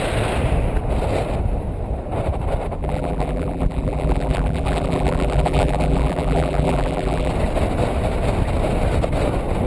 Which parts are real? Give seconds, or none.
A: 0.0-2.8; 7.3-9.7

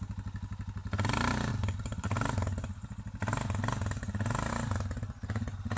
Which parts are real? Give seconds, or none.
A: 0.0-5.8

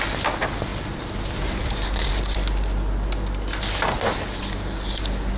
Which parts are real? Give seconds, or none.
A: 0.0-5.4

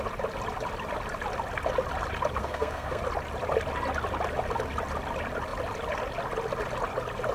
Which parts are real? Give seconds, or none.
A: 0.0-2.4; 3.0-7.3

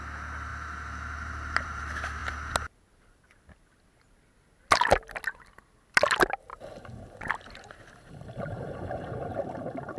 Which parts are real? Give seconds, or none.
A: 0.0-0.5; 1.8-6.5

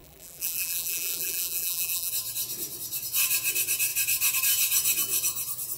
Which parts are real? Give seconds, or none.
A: 2.1-5.8

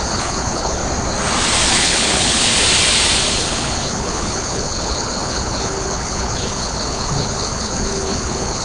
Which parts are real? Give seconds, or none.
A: 0.8-1.7; 2.5-3.3

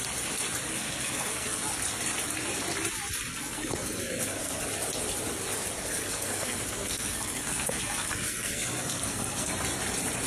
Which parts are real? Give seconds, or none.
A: 0.0-0.7; 1.7-3.3; 4.6-5.8; 9.5-10.3